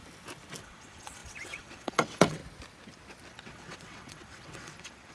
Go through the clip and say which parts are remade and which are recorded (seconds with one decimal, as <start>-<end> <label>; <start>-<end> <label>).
0.0-0.6 recorded; 0.6-2.4 remade; 2.4-3.3 recorded; 3.3-5.1 remade